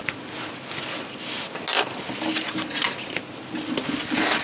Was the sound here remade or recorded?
recorded